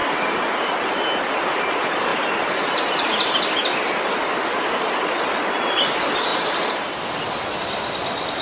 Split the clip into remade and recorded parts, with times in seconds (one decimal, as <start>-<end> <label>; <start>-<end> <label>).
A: 0.0-1.2 remade; 1.2-6.3 recorded; 6.3-6.9 remade; 6.9-8.4 recorded